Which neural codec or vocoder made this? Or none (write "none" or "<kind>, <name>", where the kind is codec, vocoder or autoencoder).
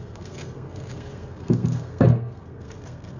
codec, SNAC